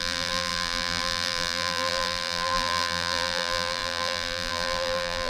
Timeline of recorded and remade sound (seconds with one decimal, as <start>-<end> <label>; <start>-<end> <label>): 0.0-5.3 remade